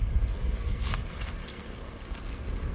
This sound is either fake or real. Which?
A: fake